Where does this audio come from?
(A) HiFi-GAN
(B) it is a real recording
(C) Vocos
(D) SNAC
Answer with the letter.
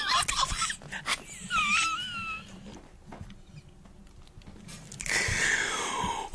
B